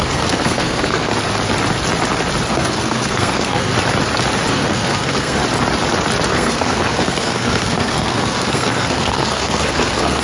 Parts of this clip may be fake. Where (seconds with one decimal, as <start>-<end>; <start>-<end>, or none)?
0.0-1.1; 2.5-3.7; 4.5-5.4; 6.3-10.2